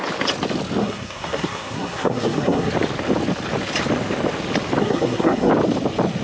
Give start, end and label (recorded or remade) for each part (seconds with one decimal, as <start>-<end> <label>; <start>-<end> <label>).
0.0-0.8 recorded; 0.8-2.7 remade; 2.7-4.8 recorded; 4.8-5.5 remade; 5.5-6.2 recorded